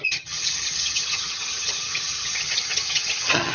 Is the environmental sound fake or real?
fake